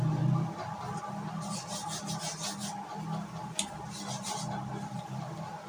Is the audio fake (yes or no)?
no